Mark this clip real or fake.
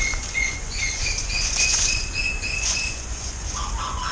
fake